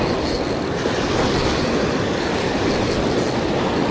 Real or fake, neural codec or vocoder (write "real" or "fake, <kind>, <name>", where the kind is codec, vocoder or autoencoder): real